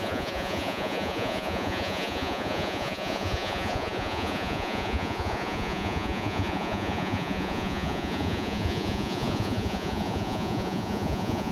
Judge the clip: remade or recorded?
remade